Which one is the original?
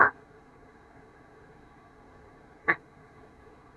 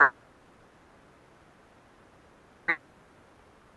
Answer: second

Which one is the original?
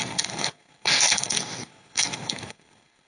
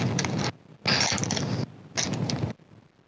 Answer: second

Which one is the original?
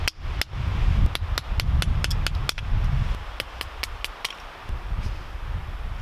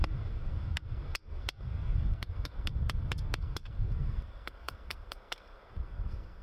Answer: first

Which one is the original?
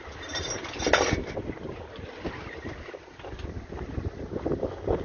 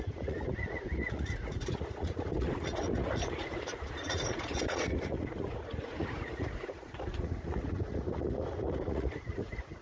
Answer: first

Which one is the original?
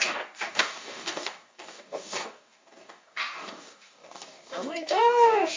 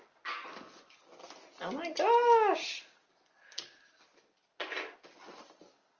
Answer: second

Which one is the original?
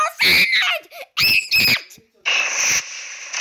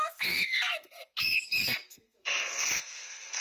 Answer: first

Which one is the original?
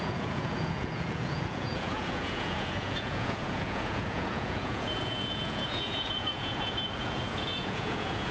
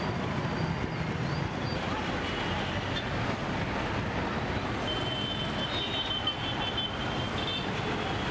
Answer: second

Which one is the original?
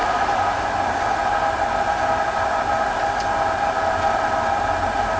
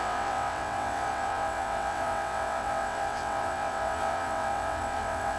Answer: first